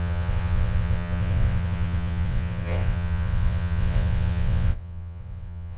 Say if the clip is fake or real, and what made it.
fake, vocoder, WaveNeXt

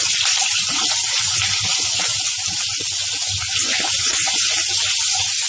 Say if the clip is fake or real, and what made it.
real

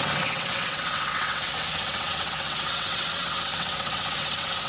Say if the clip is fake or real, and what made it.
fake, vocoder, WaveNeXt